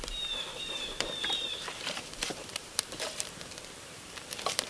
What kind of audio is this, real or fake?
fake